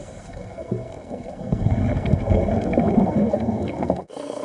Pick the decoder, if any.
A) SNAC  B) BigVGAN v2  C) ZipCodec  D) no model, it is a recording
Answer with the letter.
A